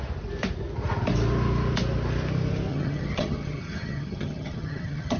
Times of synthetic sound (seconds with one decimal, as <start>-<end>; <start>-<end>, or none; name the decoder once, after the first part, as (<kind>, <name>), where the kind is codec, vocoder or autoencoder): 2.7-5.2 (vocoder, HiFi-GAN)